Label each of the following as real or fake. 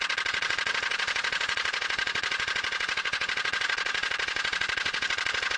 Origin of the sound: fake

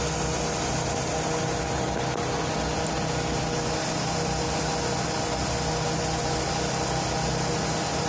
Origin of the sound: real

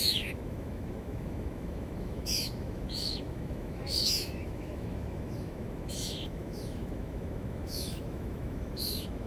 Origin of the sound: fake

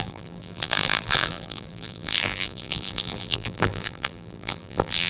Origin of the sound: fake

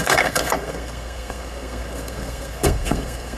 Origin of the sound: fake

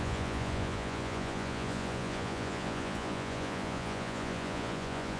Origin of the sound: fake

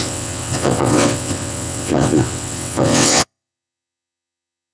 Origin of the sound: fake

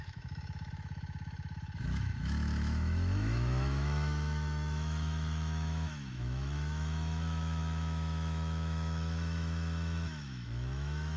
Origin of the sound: fake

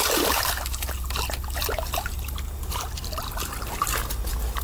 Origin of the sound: real